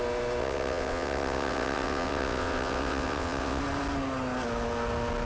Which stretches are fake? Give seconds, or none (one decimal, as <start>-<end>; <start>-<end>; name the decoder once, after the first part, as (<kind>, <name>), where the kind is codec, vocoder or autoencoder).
0.4-3.6 (vocoder, WaveNeXt)